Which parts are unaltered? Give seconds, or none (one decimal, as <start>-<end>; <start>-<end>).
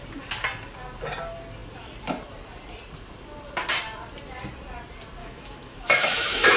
0.0-5.2